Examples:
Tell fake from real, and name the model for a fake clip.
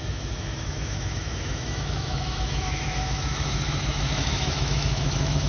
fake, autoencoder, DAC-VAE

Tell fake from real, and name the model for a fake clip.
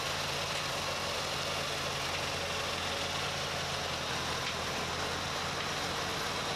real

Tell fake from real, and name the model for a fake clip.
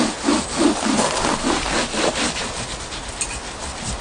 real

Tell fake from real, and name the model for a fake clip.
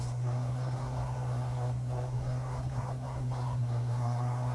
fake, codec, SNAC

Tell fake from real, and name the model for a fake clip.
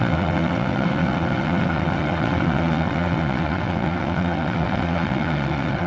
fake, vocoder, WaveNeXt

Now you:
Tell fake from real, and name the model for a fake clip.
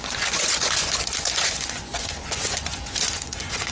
fake, vocoder, Vocos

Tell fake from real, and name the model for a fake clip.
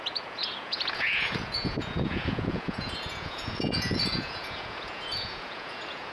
fake, vocoder, Vocos